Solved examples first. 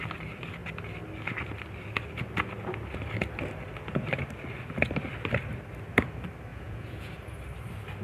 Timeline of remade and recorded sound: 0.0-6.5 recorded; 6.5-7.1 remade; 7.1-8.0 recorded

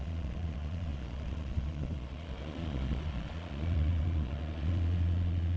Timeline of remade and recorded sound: 0.0-5.6 remade